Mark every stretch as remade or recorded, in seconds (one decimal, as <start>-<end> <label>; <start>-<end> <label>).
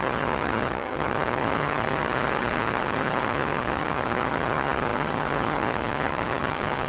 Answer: 0.0-6.9 remade